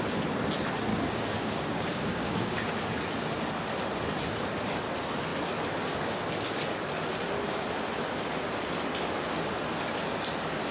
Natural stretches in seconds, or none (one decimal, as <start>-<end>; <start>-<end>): 0.0-0.9; 2.7-10.7

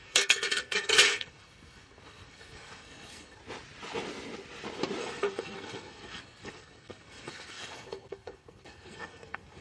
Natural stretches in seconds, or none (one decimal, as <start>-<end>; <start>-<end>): 3.4-5.0

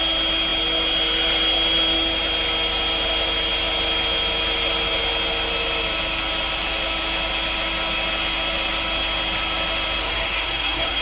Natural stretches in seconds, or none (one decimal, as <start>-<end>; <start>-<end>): 0.0-10.0

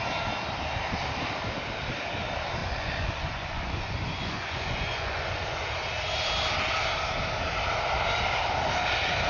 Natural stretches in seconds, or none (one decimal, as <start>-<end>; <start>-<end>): 0.0-2.6; 5.7-9.3

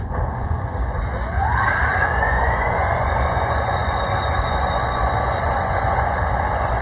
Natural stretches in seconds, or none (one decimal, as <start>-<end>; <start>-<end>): 1.4-2.0

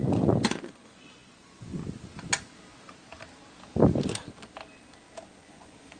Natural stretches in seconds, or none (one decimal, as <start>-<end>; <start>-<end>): 1.8-5.4

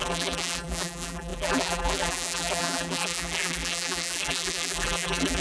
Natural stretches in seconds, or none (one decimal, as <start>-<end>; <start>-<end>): none

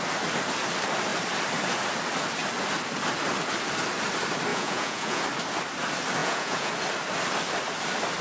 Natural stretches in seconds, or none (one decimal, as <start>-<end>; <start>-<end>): 0.0-4.5; 5.2-6.2; 6.7-8.2